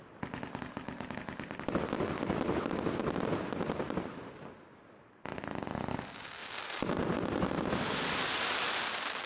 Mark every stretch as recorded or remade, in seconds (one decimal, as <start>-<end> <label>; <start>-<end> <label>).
0.0-9.3 recorded